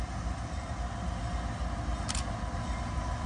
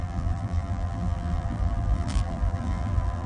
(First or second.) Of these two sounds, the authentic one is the first